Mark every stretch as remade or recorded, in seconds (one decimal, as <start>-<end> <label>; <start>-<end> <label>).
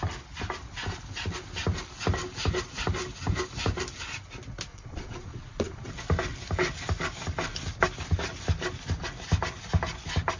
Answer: 0.0-4.7 recorded; 4.7-5.9 remade; 5.9-10.4 recorded